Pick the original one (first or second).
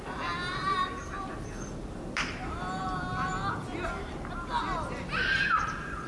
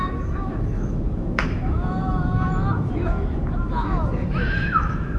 first